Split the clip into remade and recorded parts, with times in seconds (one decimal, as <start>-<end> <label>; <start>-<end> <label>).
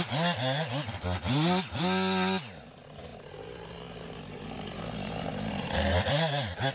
0.0-6.7 recorded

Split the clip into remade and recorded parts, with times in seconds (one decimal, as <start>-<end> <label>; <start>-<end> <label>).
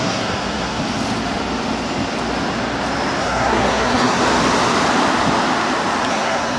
0.0-0.8 remade; 0.8-3.2 recorded; 3.2-4.2 remade; 4.2-6.1 recorded; 6.1-6.6 remade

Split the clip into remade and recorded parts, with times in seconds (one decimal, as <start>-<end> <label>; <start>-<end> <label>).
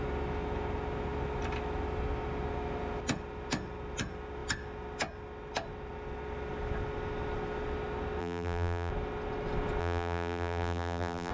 0.0-8.2 recorded; 8.2-8.9 remade; 8.9-9.8 recorded; 9.8-11.3 remade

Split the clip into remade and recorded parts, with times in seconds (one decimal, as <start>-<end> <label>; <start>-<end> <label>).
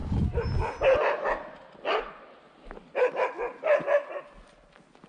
0.0-5.1 recorded